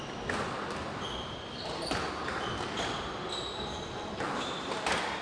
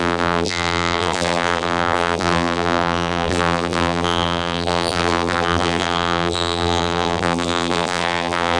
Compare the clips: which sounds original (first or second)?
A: first